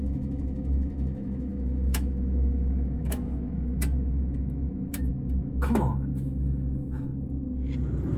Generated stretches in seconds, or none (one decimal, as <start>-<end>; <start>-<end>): 0.0-7.1